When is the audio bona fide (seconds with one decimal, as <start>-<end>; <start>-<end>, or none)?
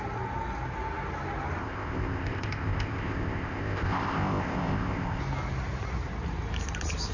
0.0-1.6; 5.2-7.1